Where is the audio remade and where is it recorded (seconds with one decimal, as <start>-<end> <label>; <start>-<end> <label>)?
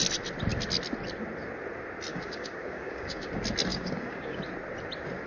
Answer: 0.0-2.1 recorded; 2.1-3.3 remade; 3.3-3.7 recorded; 3.7-4.4 remade; 4.4-5.3 recorded